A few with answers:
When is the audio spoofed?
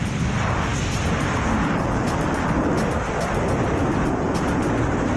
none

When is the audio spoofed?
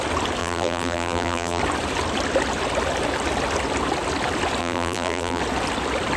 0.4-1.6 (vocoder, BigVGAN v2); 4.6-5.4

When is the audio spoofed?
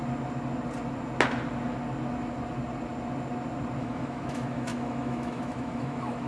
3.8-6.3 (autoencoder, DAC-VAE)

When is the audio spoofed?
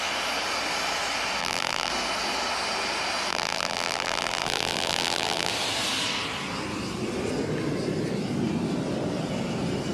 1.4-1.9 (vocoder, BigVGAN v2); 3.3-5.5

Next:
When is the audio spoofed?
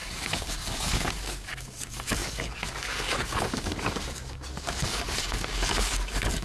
0.0-6.4 (codec, DAC)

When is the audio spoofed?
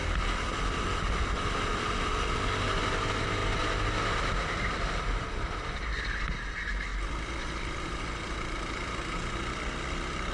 0.0-2.9 (vocoder, BigVGAN v2); 6.9-8.0